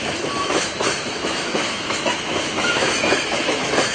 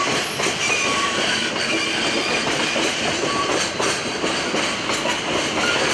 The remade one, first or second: first